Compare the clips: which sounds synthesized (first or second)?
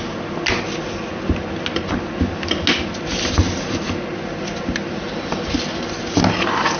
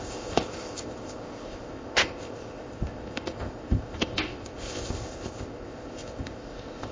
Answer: second